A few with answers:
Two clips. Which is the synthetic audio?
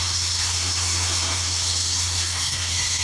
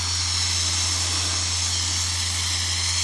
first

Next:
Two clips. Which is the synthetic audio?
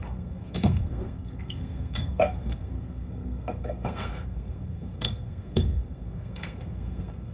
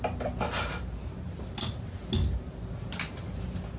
first